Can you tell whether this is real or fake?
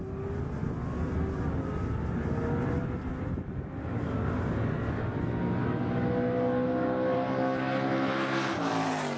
real